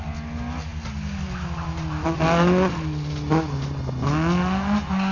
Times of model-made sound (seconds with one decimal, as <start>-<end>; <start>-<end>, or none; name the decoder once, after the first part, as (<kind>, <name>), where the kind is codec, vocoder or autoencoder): none